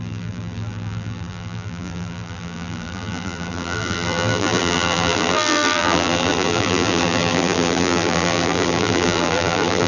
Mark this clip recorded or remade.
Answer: remade